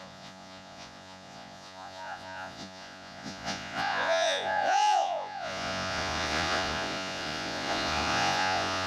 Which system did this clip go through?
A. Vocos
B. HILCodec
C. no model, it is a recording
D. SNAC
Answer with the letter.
A